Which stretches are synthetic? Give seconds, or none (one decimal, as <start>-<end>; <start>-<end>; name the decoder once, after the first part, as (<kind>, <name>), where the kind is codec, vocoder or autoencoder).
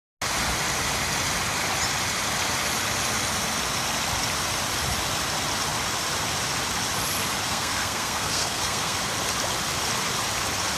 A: 7.5-9.0 (codec, SNAC)